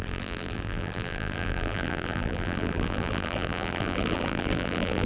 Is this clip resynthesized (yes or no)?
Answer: yes